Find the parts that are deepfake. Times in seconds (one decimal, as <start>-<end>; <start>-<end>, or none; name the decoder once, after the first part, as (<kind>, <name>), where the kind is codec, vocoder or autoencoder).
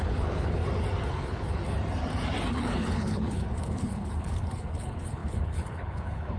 0.0-0.6 (codec, HILCodec); 1.1-1.6; 2.5-6.4